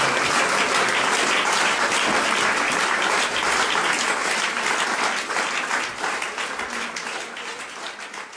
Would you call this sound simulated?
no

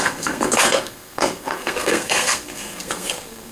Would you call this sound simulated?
yes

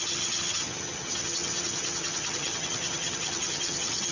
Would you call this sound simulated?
yes